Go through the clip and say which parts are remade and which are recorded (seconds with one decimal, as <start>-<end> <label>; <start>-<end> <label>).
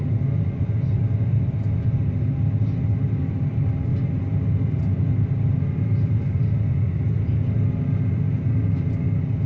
0.0-9.5 recorded